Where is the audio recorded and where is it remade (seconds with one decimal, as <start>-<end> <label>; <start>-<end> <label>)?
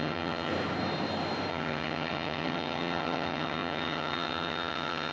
0.0-0.5 remade; 0.5-1.5 recorded; 1.5-5.1 remade